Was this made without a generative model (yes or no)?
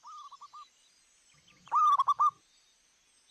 yes